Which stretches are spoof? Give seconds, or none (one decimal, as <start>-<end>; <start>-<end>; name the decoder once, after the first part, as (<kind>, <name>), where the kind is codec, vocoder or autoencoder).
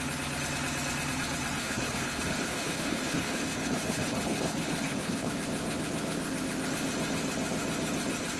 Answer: 1.6-5.3 (codec, HILCodec)